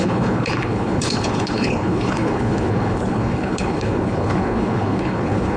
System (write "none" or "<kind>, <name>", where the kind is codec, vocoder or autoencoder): codec, HILCodec